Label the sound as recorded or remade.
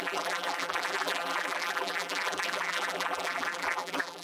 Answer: remade